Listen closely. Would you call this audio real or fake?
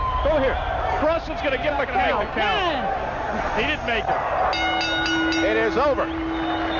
real